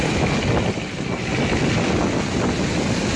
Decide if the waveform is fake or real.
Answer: real